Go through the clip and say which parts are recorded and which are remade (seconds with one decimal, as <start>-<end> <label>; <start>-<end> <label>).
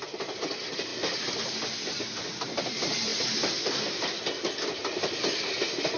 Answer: 0.0-6.0 recorded